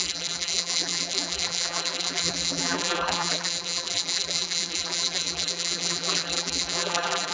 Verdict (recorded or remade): remade